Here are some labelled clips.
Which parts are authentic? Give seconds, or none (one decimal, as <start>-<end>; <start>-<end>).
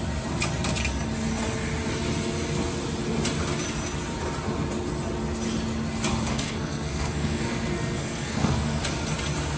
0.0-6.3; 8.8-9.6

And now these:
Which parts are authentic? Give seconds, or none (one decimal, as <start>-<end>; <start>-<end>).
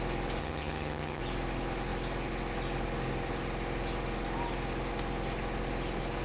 0.0-0.4; 1.2-6.2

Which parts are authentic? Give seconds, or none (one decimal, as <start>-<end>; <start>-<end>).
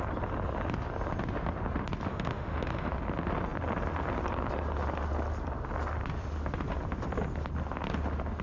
0.0-2.1; 2.9-8.4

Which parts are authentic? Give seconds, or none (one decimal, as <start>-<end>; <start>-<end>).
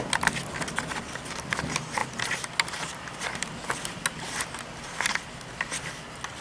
0.0-6.4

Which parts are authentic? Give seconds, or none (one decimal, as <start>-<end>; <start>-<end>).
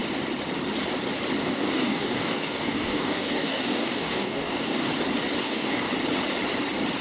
0.0-1.4; 4.9-5.4; 5.9-7.0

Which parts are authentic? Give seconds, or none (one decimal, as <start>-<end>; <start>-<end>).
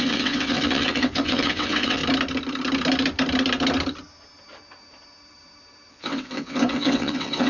2.0-5.9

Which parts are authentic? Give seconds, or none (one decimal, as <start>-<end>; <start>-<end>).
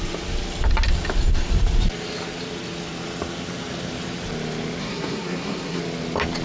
0.0-4.8; 5.8-6.4